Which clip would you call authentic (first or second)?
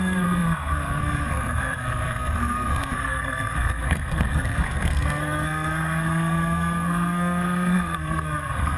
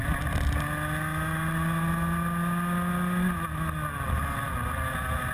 second